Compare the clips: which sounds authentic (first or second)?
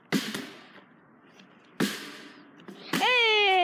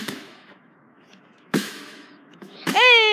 first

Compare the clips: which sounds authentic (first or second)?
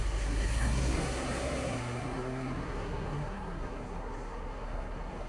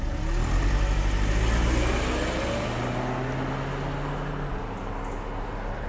second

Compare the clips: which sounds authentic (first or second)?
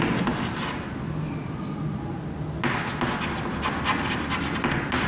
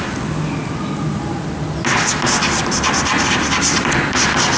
first